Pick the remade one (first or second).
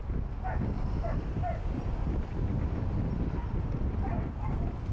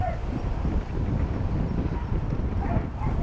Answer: second